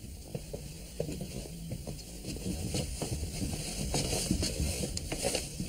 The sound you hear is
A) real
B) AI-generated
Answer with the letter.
A